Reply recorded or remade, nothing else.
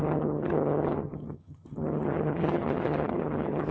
remade